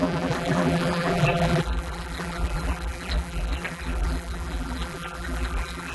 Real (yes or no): no